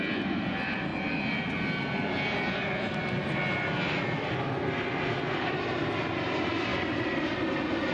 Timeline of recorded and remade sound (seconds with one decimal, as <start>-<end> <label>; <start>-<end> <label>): 0.0-7.9 recorded